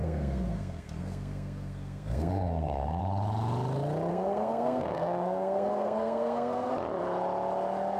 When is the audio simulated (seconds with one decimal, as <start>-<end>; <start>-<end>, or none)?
0.0-3.0; 4.1-6.7